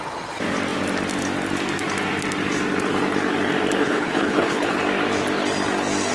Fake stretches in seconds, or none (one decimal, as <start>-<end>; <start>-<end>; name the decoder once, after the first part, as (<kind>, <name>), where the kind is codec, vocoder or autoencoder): 3.8-4.8 (codec, HILCodec)